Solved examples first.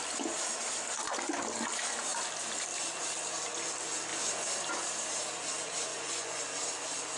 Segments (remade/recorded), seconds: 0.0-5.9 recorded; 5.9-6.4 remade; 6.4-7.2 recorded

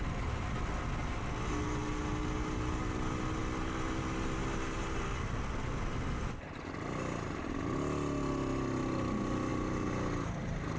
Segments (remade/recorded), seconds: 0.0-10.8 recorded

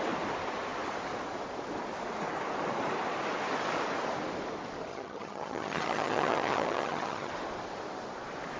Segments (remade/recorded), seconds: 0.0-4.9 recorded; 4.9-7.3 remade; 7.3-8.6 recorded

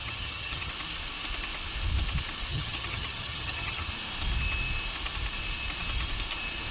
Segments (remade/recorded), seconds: 0.0-0.7 remade; 0.7-2.5 recorded; 2.5-3.9 remade; 3.9-6.7 recorded